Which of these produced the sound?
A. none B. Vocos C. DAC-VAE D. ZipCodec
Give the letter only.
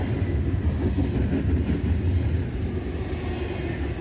A